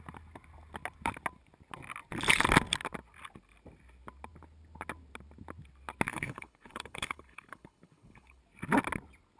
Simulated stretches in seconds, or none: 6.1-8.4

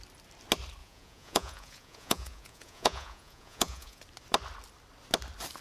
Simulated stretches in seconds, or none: 0.8-4.0

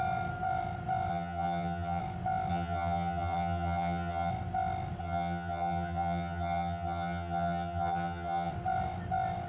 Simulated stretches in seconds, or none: 1.1-2.0; 2.5-4.3; 5.0-8.5

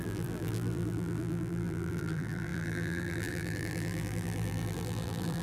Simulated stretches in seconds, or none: 0.0-5.4

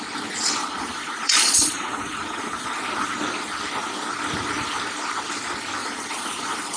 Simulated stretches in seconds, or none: 0.6-2.8; 5.8-6.8